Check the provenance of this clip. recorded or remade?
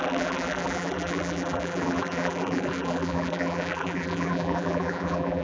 remade